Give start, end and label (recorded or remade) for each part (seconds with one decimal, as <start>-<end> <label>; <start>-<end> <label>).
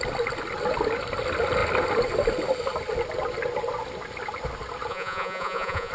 0.0-4.9 recorded; 4.9-5.9 remade